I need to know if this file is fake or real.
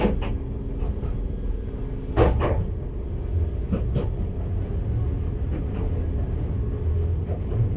real